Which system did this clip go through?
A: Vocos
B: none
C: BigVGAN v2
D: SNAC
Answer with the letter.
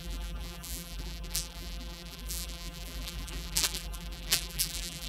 C